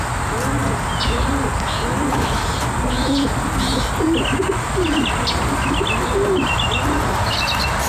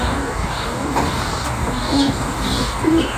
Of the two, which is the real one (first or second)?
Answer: first